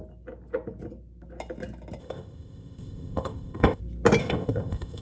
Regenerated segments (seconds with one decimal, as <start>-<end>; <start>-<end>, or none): 2.0-3.8; 4.2-5.0